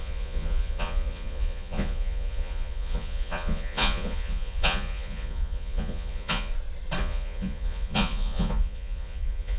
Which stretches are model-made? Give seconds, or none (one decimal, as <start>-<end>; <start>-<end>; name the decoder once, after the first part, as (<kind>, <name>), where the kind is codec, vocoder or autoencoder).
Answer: 0.0-6.5 (vocoder, Vocos); 7.0-9.6